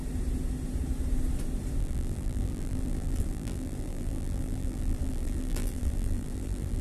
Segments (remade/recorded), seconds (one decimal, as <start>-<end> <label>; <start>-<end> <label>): 0.0-1.8 recorded; 1.8-6.8 remade